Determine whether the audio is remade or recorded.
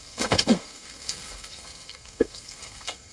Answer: remade